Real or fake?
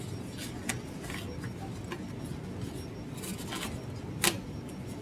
real